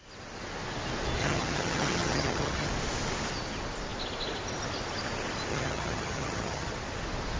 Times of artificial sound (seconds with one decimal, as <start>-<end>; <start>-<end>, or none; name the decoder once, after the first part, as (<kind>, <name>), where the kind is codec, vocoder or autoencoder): 1.2-2.7 (vocoder, HiFi-GAN); 5.5-6.7